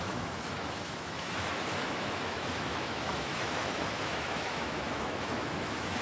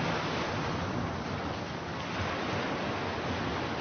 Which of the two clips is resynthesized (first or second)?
first